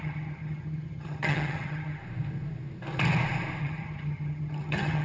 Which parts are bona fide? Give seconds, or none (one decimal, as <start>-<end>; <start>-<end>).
2.0-3.6